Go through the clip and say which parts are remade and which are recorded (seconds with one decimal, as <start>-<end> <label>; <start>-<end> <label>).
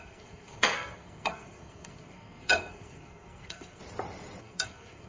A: 0.0-3.8 remade; 3.8-4.4 recorded; 4.4-5.1 remade